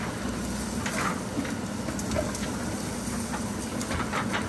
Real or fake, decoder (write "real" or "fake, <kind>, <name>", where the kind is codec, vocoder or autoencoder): real